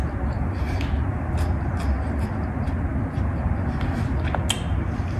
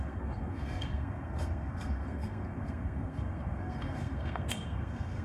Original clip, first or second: first